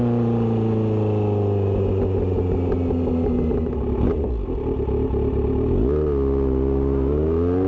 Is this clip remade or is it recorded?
recorded